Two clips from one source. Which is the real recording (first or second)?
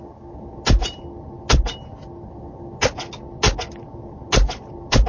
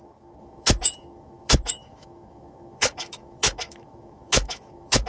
first